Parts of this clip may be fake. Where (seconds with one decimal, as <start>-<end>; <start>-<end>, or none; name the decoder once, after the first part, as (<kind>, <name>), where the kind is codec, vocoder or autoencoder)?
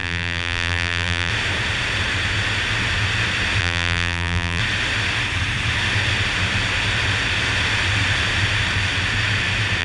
0.0-1.3 (vocoder, BigVGAN v2); 3.6-4.6